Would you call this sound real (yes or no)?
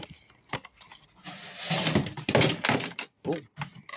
yes